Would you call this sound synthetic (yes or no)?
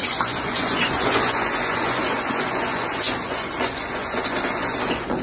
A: yes